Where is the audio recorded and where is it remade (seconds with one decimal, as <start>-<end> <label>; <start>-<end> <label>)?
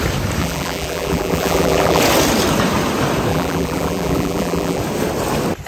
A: 0.0-0.4 recorded; 0.4-2.0 remade; 2.0-3.3 recorded; 3.3-4.8 remade; 4.8-5.7 recorded